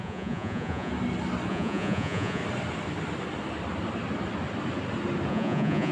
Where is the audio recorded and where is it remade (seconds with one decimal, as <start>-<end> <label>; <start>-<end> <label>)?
0.0-0.9 remade; 0.9-1.5 recorded; 1.5-2.4 remade; 2.4-5.3 recorded; 5.3-5.9 remade